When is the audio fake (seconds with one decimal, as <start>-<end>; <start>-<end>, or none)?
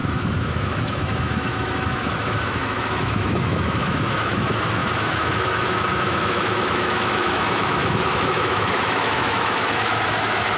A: 0.0-10.6